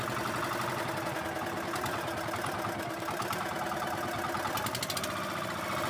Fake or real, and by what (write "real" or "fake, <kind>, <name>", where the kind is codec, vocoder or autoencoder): real